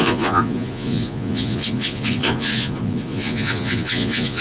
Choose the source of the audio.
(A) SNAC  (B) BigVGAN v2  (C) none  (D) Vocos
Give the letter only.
D